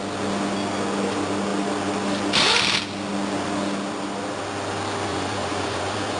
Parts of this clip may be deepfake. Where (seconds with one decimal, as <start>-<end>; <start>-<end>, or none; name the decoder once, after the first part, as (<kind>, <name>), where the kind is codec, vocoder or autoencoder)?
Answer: 5.1-6.2 (vocoder, Vocos)